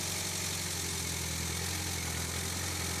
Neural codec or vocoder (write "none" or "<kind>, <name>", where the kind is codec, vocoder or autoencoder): none